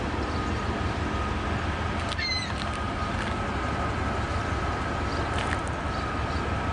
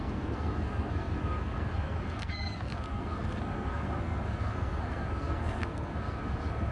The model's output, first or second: second